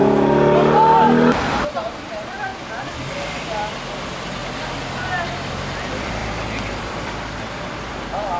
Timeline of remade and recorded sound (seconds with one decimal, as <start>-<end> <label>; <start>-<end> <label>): 0.0-1.6 recorded; 1.6-2.5 remade; 2.5-3.1 recorded; 3.1-4.4 remade; 4.4-5.2 recorded; 5.2-6.2 remade; 6.2-6.8 recorded; 6.8-8.4 remade

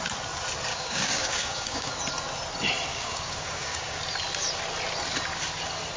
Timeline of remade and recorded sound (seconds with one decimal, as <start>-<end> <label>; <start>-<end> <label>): 0.0-0.7 recorded; 0.7-1.9 remade; 1.9-2.9 recorded; 2.9-4.0 remade; 4.0-6.0 recorded

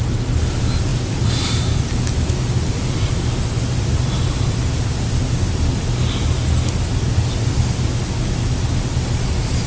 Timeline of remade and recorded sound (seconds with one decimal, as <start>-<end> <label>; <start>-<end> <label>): 0.0-9.7 recorded

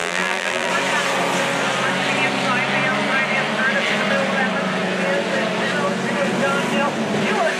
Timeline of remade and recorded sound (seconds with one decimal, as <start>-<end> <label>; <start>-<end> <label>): 0.0-0.7 remade; 0.7-7.6 recorded

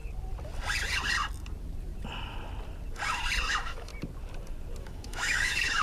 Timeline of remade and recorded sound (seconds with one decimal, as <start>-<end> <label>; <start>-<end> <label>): 0.0-3.5 recorded; 3.5-3.9 remade; 3.9-4.8 recorded; 4.8-5.8 remade

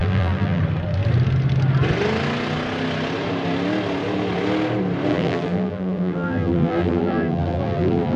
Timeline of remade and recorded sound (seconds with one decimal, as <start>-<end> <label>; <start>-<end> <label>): 0.0-0.6 remade; 0.6-5.1 recorded; 5.1-8.2 remade